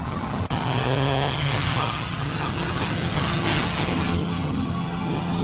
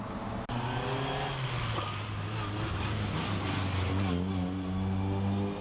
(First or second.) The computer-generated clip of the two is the first